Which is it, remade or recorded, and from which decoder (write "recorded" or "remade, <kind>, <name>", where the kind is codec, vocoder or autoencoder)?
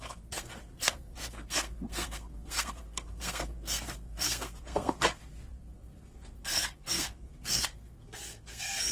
remade, codec, SNAC